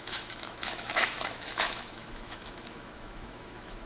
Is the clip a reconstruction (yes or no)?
yes